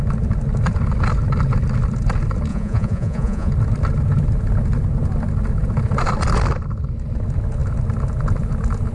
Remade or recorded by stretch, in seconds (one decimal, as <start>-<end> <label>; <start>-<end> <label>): 0.0-2.5 recorded; 2.5-3.5 remade; 3.5-8.9 recorded